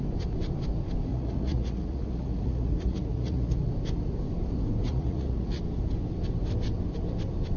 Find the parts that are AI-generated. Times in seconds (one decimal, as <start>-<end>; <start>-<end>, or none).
1.1-3.7; 4.9-5.6